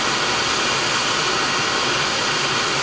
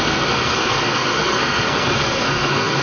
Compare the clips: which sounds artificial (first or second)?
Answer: second